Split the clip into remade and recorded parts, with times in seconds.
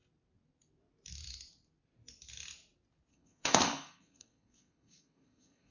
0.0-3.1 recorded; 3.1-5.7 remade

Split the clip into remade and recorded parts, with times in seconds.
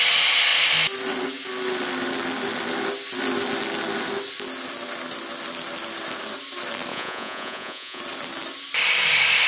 0.0-6.9 recorded; 6.9-8.0 remade; 8.0-9.5 recorded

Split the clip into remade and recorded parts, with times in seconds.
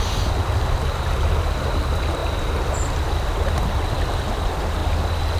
0.0-5.4 recorded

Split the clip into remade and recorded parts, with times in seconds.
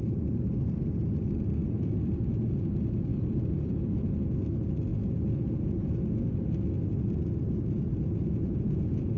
0.0-3.1 recorded; 3.1-4.1 remade; 4.1-4.9 recorded; 4.9-5.9 remade; 5.9-8.2 recorded; 8.2-9.2 remade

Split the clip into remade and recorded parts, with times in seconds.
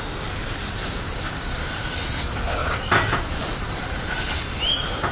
0.0-0.4 recorded; 0.4-1.8 remade; 1.8-2.6 recorded; 2.6-4.6 remade; 4.6-5.1 recorded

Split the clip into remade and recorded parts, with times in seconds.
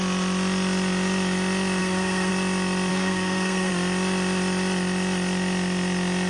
0.0-1.8 recorded; 1.8-2.3 remade; 2.3-2.9 recorded; 2.9-3.7 remade; 3.7-6.3 recorded